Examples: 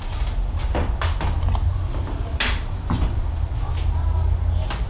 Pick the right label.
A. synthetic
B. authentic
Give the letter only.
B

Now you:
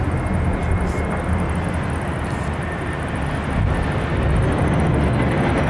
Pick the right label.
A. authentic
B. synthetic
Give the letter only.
A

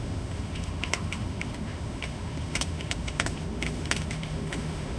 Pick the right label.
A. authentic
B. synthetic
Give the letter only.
B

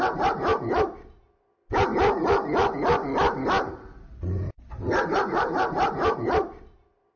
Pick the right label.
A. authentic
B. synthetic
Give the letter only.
A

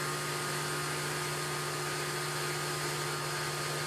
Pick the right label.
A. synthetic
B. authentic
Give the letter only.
B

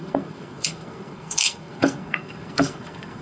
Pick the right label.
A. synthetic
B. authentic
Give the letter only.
A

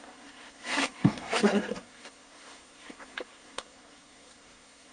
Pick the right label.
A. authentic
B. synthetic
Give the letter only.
B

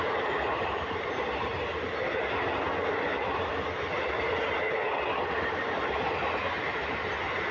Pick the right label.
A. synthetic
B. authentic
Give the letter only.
B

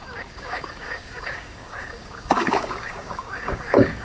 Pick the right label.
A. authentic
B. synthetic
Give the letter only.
B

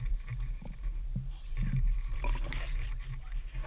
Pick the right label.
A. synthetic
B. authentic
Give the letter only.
A